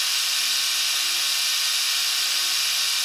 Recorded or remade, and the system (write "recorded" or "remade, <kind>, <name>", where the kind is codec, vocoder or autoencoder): recorded